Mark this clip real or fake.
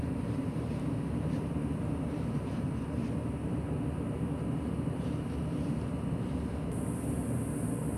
fake